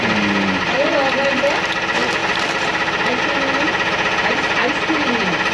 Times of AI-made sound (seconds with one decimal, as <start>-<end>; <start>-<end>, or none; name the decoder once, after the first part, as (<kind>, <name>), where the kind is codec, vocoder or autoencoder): 2.2-3.2 (vocoder, BigVGAN v2)